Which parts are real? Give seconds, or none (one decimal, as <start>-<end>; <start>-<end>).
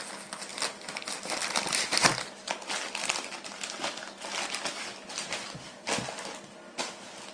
0.0-7.3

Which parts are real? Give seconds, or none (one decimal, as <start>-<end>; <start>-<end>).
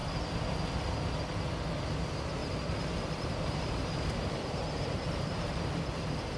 0.0-2.4; 6.0-6.4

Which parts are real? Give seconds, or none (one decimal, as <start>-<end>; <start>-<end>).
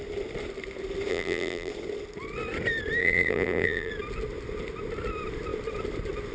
0.0-1.1; 1.7-3.0; 3.9-6.3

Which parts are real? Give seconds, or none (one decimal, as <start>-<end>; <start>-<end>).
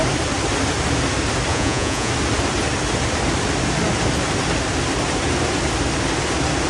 0.0-1.5; 2.1-6.7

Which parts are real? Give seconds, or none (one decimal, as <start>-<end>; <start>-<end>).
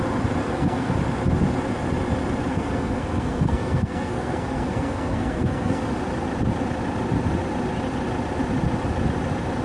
0.0-0.4; 0.9-2.5; 5.8-9.6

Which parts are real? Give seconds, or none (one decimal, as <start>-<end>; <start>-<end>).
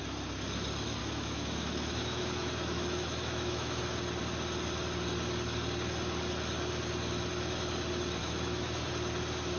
0.0-1.0; 3.8-8.2; 8.9-9.6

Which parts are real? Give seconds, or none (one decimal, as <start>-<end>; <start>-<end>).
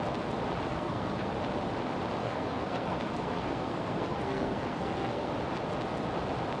0.0-0.7; 1.3-2.2; 5.3-6.6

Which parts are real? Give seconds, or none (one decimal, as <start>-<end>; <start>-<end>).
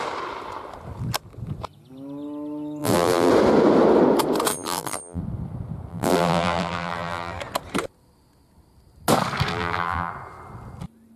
0.0-2.8; 3.3-4.5; 5.2-5.9; 7.4-9.5; 10.1-11.2